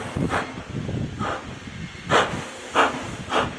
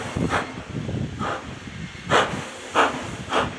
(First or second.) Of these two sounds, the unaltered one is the first